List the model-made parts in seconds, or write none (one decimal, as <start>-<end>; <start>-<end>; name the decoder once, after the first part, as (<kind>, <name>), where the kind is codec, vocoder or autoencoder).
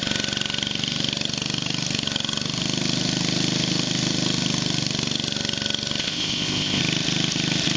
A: 6.0-6.8 (codec, ZipCodec)